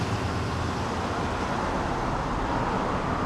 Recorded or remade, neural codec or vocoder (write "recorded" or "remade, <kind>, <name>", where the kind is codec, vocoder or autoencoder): recorded